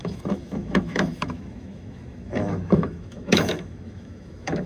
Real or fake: fake